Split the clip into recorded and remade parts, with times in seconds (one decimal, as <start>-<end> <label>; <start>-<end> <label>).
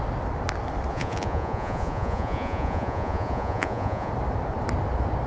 0.0-0.9 recorded; 0.9-4.1 remade; 4.1-5.3 recorded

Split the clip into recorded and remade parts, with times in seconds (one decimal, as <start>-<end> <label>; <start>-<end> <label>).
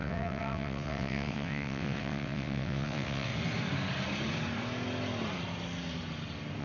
0.0-3.3 remade; 3.3-6.6 recorded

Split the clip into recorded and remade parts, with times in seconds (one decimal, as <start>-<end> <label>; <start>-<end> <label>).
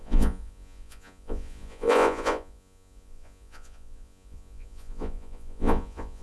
0.0-6.2 remade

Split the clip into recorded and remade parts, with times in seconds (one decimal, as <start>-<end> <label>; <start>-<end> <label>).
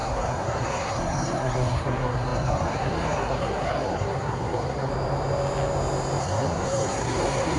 0.0-4.9 remade; 4.9-6.2 recorded; 6.2-7.6 remade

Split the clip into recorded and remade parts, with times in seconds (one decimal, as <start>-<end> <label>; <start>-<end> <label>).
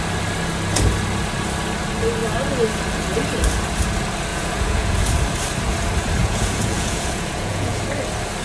0.0-4.3 recorded; 4.3-5.1 remade; 5.1-6.2 recorded; 6.2-7.8 remade; 7.8-8.4 recorded